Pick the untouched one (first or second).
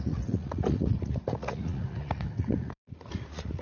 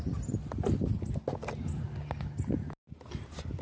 second